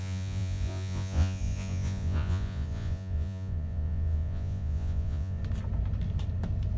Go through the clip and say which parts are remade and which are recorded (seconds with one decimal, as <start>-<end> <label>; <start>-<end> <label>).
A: 0.0-5.4 remade; 5.4-6.8 recorded